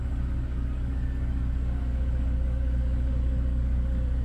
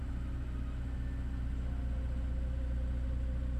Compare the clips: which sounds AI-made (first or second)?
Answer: first